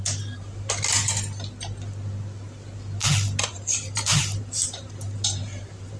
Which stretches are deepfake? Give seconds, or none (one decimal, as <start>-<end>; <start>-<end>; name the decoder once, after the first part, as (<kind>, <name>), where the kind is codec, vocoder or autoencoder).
0.0-1.0 (vocoder, BigVGAN v2); 3.5-6.0